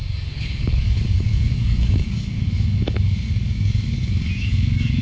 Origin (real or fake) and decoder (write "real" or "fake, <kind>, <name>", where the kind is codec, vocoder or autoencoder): fake, codec, DAC